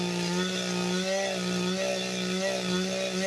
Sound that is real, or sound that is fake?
real